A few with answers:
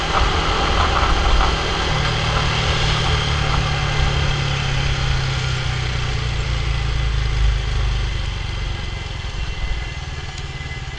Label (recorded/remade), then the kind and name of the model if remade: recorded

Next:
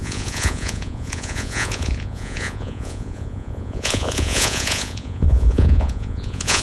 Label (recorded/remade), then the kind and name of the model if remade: remade, vocoder, Vocos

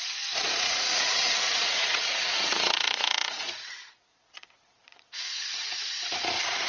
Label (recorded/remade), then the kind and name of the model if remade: remade, vocoder, Vocos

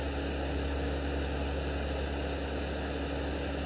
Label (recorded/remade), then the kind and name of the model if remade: recorded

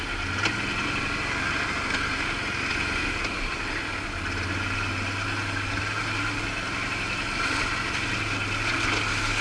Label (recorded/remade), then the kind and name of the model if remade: recorded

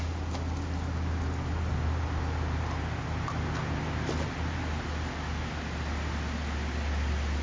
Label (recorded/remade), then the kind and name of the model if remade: recorded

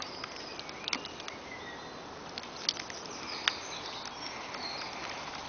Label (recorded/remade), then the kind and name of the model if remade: recorded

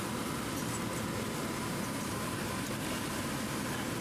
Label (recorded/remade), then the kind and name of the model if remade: recorded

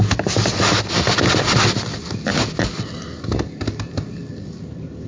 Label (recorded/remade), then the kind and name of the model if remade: recorded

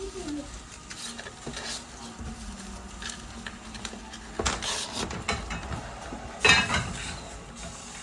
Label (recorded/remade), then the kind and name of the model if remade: recorded